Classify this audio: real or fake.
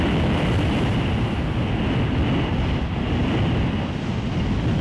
real